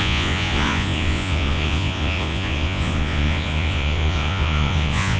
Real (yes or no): no